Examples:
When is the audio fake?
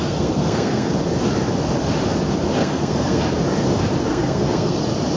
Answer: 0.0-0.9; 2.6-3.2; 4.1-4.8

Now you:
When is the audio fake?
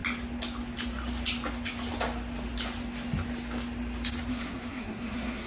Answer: 4.3-5.5